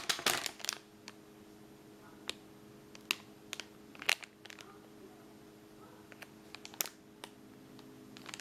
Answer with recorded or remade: recorded